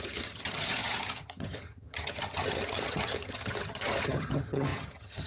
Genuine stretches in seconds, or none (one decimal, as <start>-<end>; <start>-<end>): none